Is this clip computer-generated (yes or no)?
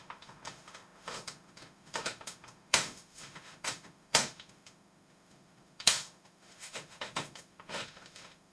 yes